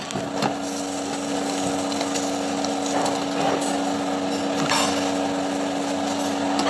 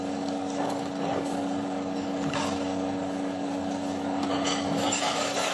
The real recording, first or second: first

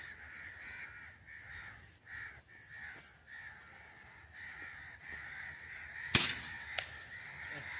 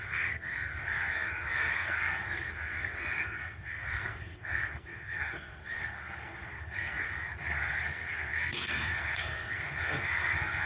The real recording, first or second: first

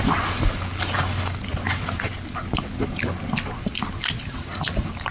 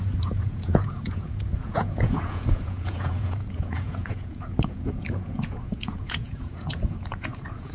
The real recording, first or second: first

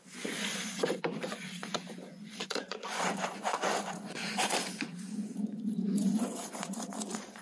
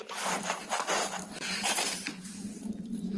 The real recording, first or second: second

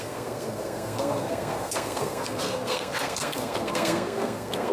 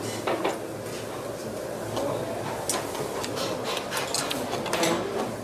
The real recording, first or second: second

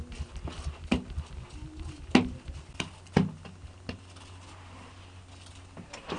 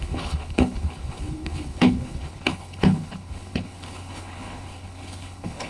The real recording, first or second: first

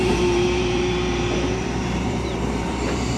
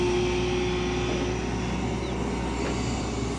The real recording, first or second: second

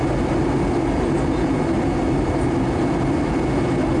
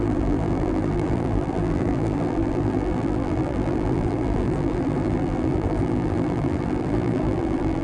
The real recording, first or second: first